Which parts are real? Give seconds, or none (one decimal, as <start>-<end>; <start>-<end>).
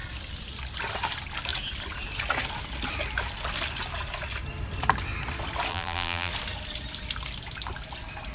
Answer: 0.0-5.7; 6.3-8.3